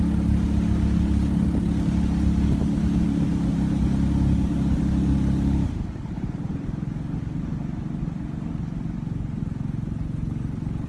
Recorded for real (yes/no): yes